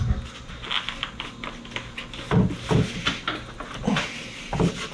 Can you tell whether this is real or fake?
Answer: real